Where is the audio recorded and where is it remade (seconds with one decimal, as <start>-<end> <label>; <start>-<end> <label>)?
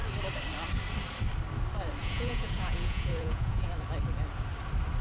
0.0-2.0 recorded; 2.0-3.7 remade; 3.7-5.0 recorded